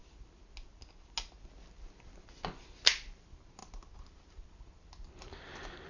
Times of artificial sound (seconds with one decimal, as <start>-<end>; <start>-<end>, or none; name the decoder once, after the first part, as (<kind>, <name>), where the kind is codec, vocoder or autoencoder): none